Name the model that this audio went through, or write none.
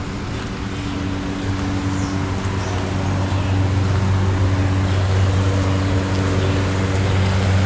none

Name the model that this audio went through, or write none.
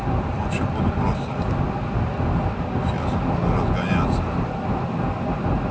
none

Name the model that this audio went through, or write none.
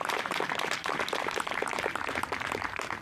vocoder, BigVGAN v2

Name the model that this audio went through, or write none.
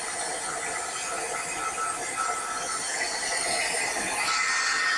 none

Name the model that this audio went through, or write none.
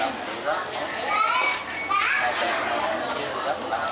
none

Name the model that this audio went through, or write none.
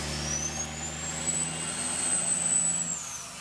none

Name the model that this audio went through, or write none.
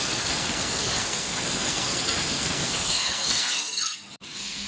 codec, SNAC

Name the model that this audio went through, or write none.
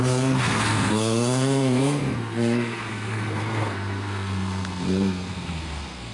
codec, SNAC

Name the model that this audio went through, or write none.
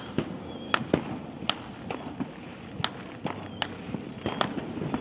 none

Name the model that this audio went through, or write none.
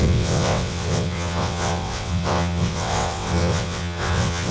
vocoder, WaveNeXt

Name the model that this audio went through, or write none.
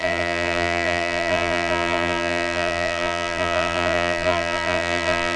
vocoder, BigVGAN v2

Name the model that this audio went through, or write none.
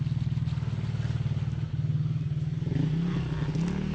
none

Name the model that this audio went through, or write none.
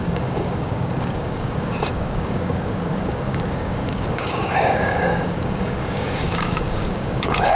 codec, DAC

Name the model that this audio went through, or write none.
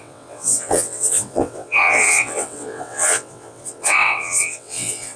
vocoder, WaveNeXt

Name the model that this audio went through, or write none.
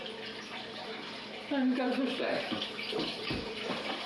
none